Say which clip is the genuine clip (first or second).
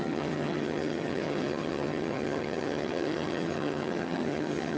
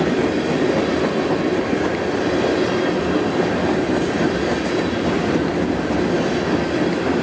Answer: second